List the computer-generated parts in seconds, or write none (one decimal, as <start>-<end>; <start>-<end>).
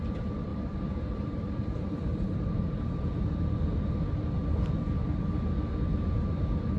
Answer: 0.5-3.5